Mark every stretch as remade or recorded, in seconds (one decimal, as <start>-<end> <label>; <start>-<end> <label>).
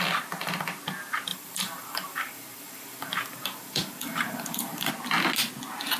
0.0-1.3 recorded; 1.3-4.9 remade; 4.9-6.0 recorded